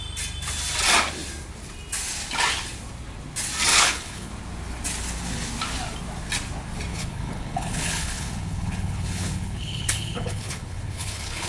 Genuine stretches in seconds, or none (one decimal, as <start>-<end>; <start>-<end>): 0.0-3.7; 4.3-6.9